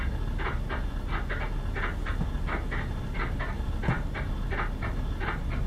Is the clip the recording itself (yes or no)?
yes